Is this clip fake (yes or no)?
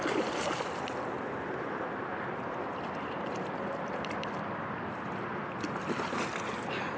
no